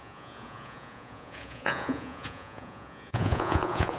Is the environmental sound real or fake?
fake